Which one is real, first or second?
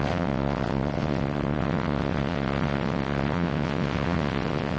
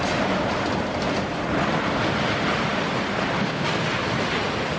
second